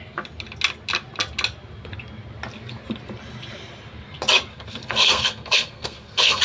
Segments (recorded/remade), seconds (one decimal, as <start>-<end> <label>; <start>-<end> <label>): 0.0-4.5 recorded; 4.5-6.4 remade